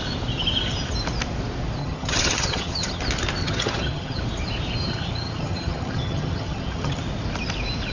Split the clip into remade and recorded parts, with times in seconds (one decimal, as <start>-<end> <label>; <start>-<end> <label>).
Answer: 0.0-1.8 recorded; 1.8-3.0 remade; 3.0-3.4 recorded; 3.4-4.2 remade; 4.2-4.8 recorded; 4.8-7.0 remade; 7.0-7.9 recorded